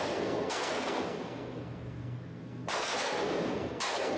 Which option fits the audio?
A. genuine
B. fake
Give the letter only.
B